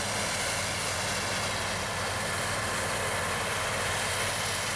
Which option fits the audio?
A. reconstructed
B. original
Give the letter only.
B